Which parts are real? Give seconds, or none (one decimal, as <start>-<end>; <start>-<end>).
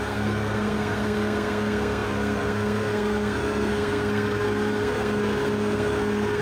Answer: none